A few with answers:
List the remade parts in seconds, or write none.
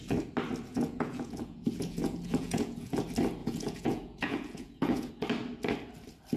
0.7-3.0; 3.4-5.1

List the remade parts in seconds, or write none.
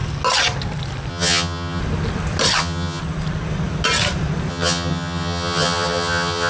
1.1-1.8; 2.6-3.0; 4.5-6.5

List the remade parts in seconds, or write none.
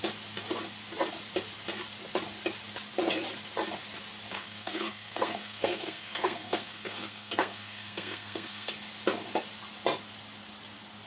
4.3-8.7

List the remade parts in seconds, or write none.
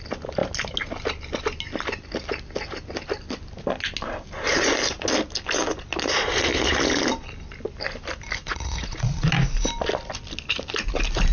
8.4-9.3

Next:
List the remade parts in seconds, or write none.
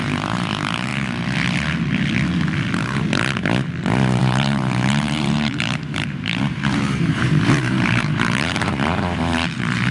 0.0-0.9; 4.2-9.9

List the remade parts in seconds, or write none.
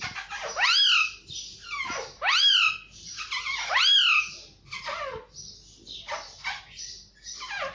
1.6-3.8